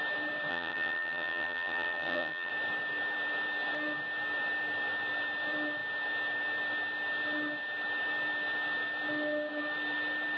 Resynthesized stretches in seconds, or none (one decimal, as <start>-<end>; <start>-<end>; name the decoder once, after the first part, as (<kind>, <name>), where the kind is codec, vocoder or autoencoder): 0.5-2.5 (vocoder, HiFi-GAN)